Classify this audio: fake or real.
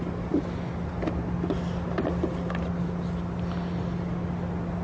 real